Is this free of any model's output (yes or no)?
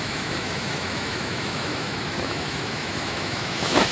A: no